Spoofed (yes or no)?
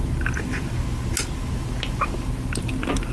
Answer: no